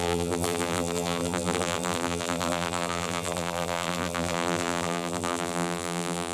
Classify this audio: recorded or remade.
remade